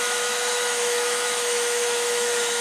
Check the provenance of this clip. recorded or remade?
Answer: remade